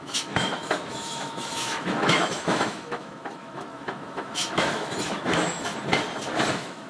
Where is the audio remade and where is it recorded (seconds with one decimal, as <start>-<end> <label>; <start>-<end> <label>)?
0.0-5.7 remade; 5.7-6.5 recorded; 6.5-6.9 remade

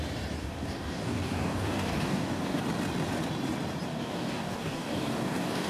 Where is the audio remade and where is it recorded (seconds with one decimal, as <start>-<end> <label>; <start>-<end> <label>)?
0.0-0.4 recorded; 0.4-2.6 remade; 2.6-3.9 recorded; 3.9-5.7 remade

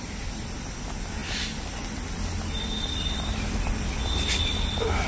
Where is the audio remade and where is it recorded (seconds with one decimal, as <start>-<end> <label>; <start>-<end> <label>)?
0.0-5.1 recorded

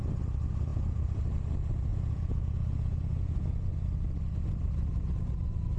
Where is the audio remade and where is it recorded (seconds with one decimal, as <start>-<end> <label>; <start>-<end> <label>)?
0.0-0.7 recorded; 0.7-1.2 remade; 1.2-1.9 recorded; 1.9-3.7 remade; 3.7-5.8 recorded

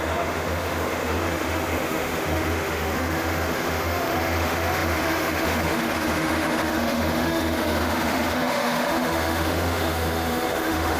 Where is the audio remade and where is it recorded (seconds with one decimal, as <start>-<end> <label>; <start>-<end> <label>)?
0.0-11.0 remade

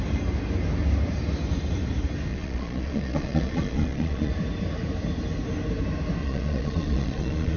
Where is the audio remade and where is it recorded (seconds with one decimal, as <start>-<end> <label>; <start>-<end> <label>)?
0.0-2.3 recorded; 2.3-4.3 remade; 4.3-6.2 recorded; 6.2-7.6 remade